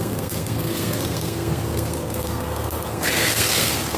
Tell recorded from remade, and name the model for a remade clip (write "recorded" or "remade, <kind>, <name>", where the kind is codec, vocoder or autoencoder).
remade, codec, SNAC